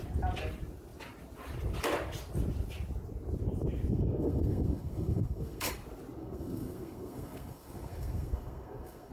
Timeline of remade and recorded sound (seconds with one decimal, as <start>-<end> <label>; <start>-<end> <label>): 0.0-3.9 recorded; 3.9-5.7 remade; 5.7-6.2 recorded; 6.2-9.1 remade